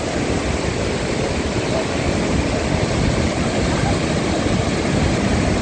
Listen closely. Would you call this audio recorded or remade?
recorded